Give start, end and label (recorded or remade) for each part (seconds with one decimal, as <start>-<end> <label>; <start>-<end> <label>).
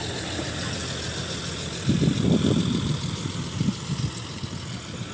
0.0-0.8 recorded; 0.8-3.9 remade; 3.9-5.1 recorded